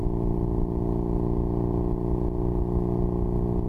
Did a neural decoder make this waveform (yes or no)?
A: no